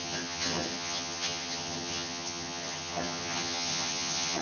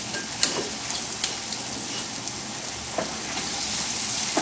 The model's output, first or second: first